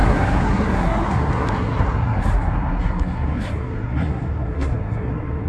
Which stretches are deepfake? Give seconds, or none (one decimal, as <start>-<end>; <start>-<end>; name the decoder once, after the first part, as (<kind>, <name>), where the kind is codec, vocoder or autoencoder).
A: 0.0-5.5 (codec, SNAC)